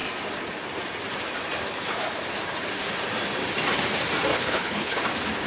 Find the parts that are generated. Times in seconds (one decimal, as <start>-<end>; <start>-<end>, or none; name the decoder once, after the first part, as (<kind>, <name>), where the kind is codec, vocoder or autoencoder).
4.3-5.0 (codec, HILCodec)